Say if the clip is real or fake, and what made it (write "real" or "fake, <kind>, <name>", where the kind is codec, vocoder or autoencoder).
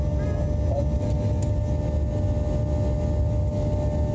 real